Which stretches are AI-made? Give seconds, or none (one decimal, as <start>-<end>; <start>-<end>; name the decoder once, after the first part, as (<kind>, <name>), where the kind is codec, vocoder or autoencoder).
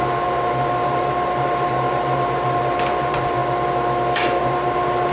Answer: 0.0-3.4 (vocoder, BigVGAN v2); 4.4-5.1